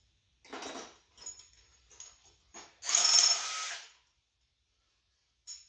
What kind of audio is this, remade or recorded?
recorded